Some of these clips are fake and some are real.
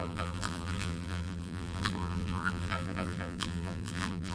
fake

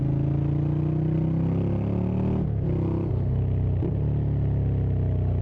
real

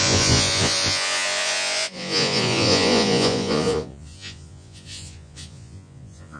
fake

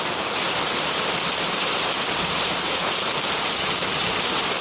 fake